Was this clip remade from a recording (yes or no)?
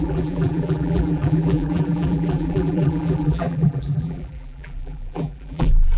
yes